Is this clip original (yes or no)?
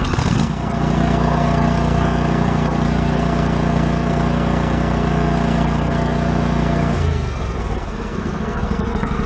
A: no